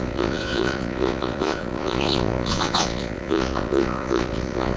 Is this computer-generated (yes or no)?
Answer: yes